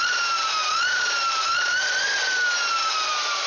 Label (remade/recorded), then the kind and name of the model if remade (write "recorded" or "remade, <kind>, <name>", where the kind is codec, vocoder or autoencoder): recorded